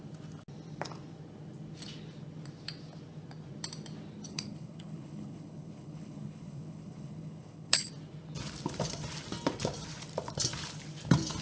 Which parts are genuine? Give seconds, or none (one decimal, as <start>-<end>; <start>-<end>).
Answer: 0.0-4.3; 7.9-11.4